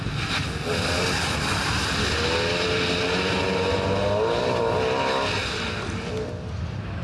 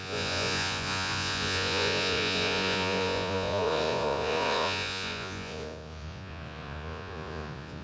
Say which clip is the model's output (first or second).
second